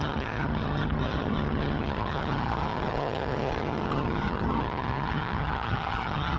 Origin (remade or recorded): remade